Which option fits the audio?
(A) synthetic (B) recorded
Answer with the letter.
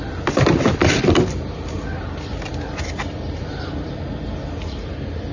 B